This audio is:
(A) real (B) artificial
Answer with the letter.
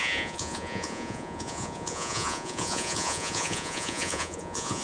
B